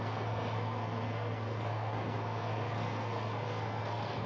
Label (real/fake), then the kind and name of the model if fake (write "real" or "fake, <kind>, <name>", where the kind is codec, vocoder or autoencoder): fake, codec, SNAC